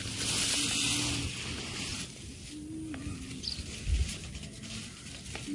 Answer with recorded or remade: recorded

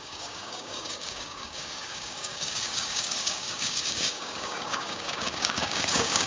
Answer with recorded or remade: remade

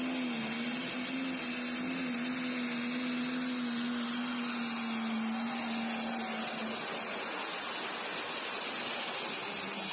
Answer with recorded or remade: recorded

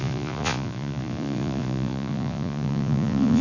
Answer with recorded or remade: remade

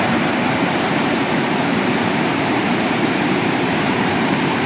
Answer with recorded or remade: remade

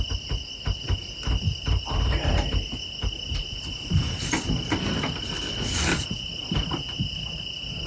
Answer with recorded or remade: recorded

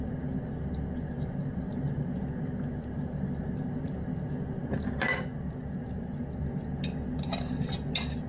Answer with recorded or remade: recorded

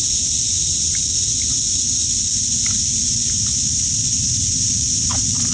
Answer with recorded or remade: recorded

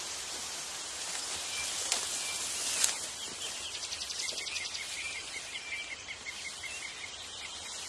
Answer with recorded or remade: recorded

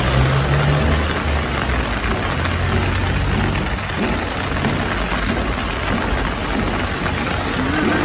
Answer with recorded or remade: recorded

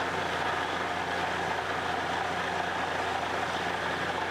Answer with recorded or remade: recorded